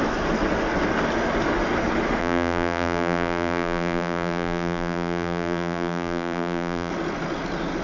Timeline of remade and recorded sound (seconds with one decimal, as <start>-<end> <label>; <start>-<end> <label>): 0.0-2.2 recorded; 2.2-6.9 remade; 6.9-7.8 recorded